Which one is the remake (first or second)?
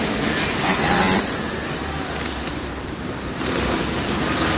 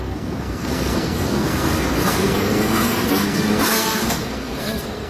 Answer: second